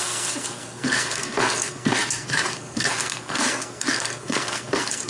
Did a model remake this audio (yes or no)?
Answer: yes